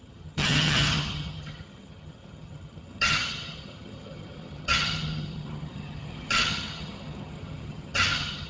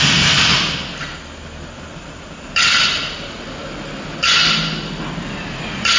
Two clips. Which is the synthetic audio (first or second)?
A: first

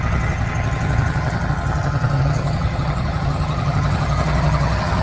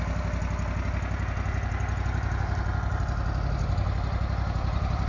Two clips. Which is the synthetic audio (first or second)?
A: first